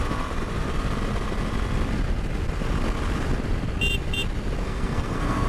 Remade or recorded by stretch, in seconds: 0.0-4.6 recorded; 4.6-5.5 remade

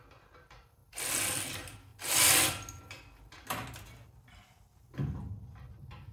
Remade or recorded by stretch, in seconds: 0.0-6.1 recorded

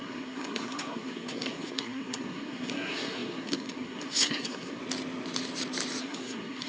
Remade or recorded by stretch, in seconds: 0.0-4.8 remade; 4.8-6.0 recorded; 6.0-6.7 remade

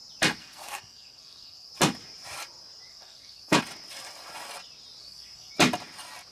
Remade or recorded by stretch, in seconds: 0.0-0.4 recorded; 0.4-1.7 remade; 1.7-2.9 recorded; 2.9-3.6 remade; 3.6-5.0 recorded; 5.0-5.5 remade; 5.5-6.3 recorded

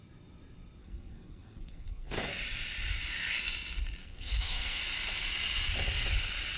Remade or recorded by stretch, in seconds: 0.0-0.8 recorded; 0.8-2.3 remade; 2.3-4.0 recorded; 4.0-4.8 remade; 4.8-6.6 recorded

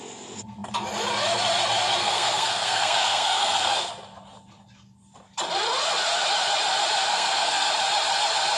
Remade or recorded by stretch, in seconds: 0.0-2.0 recorded; 2.0-3.9 remade; 3.9-7.1 recorded; 7.1-7.7 remade; 7.7-8.6 recorded